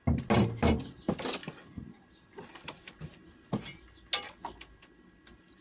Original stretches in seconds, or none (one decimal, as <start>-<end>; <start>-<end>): 0.0-5.6